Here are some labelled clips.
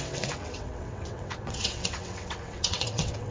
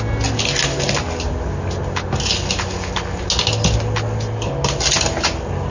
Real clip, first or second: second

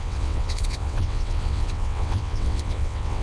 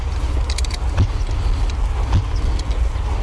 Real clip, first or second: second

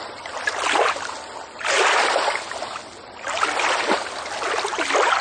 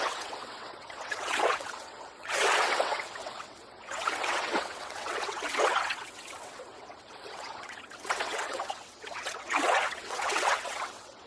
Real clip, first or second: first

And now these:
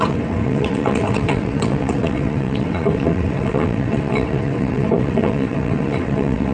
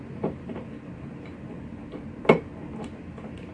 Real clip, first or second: second